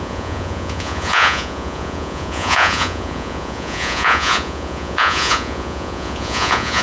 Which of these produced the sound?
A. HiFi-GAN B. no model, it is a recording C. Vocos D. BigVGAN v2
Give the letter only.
C